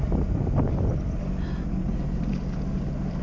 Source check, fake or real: real